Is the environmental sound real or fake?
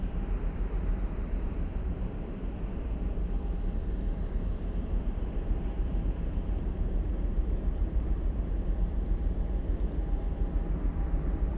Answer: fake